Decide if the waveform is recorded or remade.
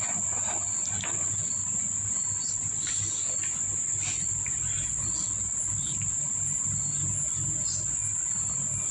recorded